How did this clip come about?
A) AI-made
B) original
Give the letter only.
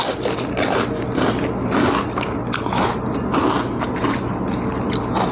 B